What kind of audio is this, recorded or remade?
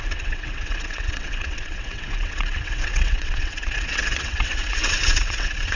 remade